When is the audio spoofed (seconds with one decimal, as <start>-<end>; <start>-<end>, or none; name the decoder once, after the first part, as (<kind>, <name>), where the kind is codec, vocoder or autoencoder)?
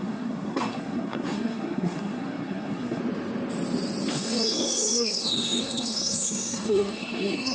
0.0-3.0 (codec, SNAC); 4.1-7.5